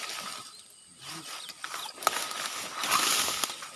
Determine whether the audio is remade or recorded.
recorded